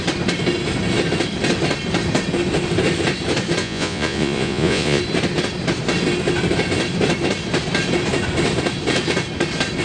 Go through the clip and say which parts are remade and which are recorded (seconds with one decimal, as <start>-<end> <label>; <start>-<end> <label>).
0.0-3.6 recorded; 3.6-5.0 remade; 5.0-9.8 recorded